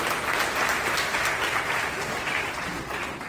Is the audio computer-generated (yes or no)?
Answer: no